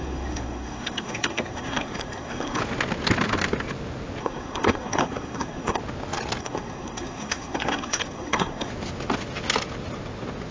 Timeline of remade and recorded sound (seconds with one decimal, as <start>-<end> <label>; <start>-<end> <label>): 0.0-2.6 remade; 2.6-4.2 recorded; 4.2-5.8 remade; 5.8-6.4 recorded; 6.4-8.7 remade; 8.7-10.5 recorded